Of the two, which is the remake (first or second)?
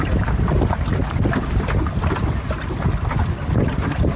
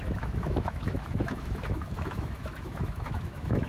second